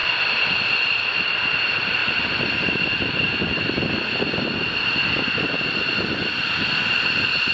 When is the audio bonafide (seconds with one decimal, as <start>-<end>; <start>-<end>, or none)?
0.0-7.5